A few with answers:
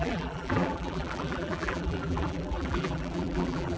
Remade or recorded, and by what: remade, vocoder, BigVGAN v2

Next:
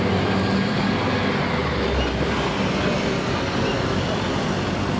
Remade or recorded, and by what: recorded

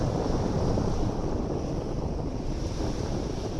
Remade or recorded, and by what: recorded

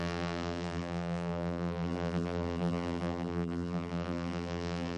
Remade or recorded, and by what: remade, vocoder, BigVGAN v2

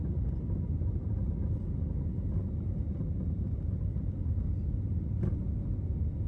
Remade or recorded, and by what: recorded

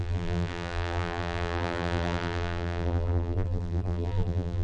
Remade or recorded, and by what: remade, vocoder, BigVGAN v2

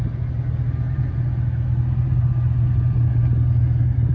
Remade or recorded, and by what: recorded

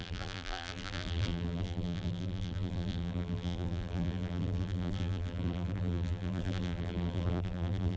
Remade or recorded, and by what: remade, vocoder, BigVGAN v2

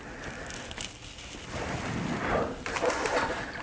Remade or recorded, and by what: recorded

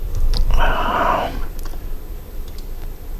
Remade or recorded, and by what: recorded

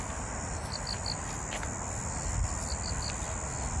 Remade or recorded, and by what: recorded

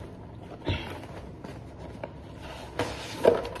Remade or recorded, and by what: recorded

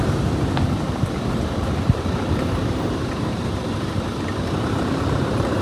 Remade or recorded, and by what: remade, vocoder, BigVGAN v2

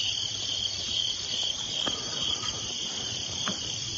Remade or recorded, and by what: remade, vocoder, BigVGAN v2